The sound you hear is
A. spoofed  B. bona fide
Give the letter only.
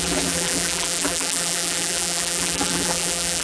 A